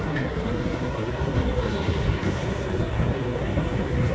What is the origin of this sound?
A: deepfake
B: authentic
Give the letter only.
A